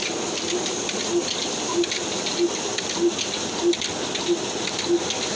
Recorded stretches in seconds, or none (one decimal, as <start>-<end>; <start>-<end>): 1.0-5.4